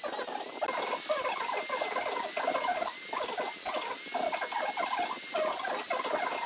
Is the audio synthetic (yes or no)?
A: no